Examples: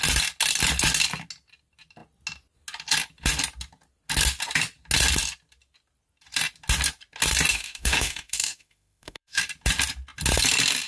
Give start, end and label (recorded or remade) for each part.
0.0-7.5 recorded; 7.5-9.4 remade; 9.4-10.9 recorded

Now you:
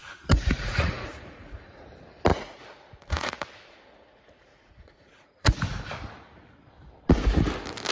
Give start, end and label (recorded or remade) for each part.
0.0-1.9 remade; 1.9-2.3 recorded; 2.3-5.6 remade; 5.6-7.9 recorded

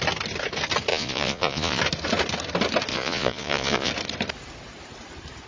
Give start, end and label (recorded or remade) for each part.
0.0-0.9 recorded; 0.9-1.8 remade; 1.8-2.9 recorded; 2.9-3.9 remade; 3.9-5.5 recorded

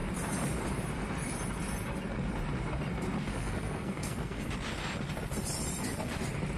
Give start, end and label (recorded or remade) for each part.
0.0-3.3 recorded; 3.3-4.5 remade; 4.5-6.6 recorded

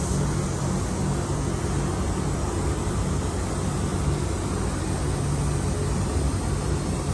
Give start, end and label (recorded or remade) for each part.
0.0-7.1 recorded

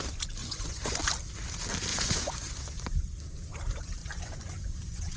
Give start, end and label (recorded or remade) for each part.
0.0-0.4 recorded; 0.4-1.0 remade; 1.0-1.9 recorded; 1.9-3.0 remade; 3.0-4.0 recorded; 4.0-5.2 remade

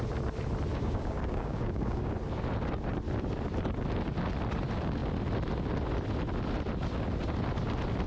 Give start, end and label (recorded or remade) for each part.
0.0-0.7 recorded; 0.7-2.1 remade; 2.1-8.1 recorded